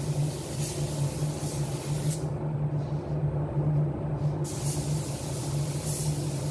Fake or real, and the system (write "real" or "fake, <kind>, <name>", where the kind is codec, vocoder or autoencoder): real